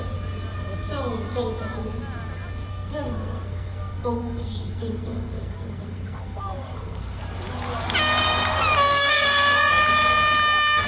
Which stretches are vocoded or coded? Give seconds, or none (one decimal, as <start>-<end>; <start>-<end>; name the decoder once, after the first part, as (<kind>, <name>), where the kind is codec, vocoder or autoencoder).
2.7-7.2 (codec, SNAC); 8.9-9.6

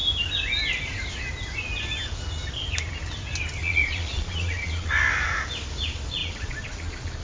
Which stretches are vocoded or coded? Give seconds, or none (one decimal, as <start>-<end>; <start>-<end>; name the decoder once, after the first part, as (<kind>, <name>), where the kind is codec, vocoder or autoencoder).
3.6-4.9 (vocoder, Vocos); 6.2-7.2

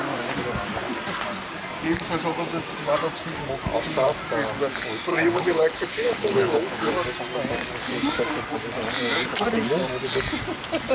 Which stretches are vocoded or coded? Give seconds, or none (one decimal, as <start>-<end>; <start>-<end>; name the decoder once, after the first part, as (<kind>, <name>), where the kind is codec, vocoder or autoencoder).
5.1-6.9 (codec, HILCodec)

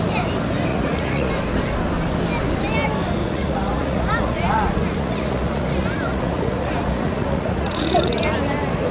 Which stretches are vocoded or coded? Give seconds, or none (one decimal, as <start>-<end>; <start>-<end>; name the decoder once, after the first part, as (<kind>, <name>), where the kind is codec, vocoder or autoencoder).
0.7-1.3 (vocoder, Vocos); 3.2-8.2

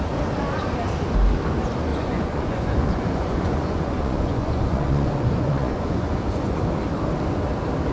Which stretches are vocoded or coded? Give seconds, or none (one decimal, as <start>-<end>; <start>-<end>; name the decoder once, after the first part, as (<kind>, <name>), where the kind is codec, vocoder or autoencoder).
1.9-6.6 (vocoder, Vocos)

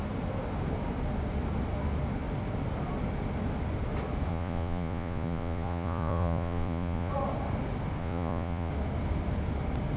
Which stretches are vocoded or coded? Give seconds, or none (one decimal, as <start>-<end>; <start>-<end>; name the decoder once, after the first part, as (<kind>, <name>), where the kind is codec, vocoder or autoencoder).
4.3-7.1 (vocoder, Vocos); 8.0-8.7

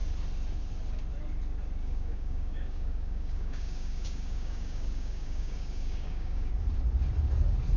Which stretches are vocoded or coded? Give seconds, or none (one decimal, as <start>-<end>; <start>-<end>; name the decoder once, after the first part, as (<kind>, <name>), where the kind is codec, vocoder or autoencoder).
1.8-6.5 (codec, DAC)